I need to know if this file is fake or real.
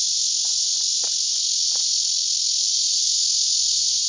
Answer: real